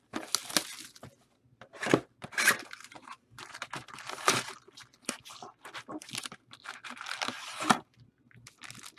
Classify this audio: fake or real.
real